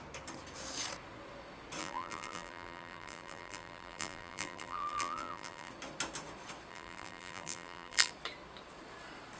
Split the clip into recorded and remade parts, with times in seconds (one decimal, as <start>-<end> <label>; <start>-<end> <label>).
0.0-1.8 recorded; 1.8-5.7 remade; 5.7-6.7 recorded; 6.7-8.1 remade; 8.1-9.4 recorded